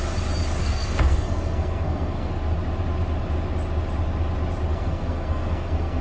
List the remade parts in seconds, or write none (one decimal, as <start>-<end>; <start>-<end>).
0.6-2.3; 4.7-6.0